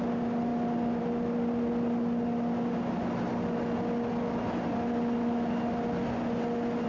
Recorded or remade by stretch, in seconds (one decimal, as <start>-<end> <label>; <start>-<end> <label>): 0.0-6.9 recorded